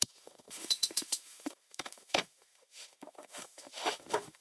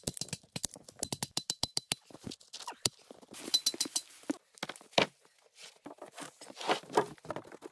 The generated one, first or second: first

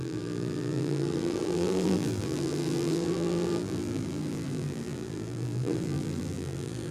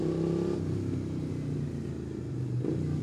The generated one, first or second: first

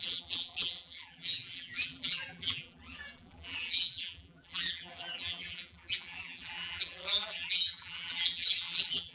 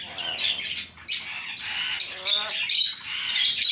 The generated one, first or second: first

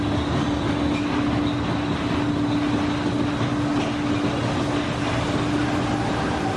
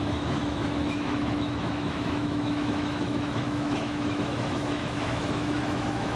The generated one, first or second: second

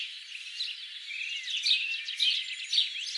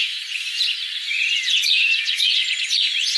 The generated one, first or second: second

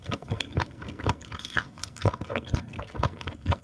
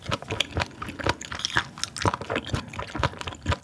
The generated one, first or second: first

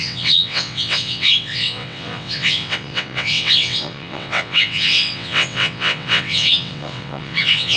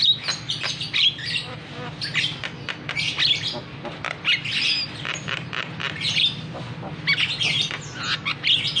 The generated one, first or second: first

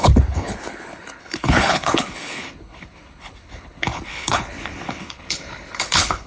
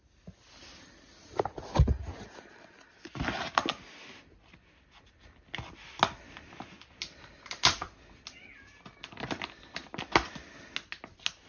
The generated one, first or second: first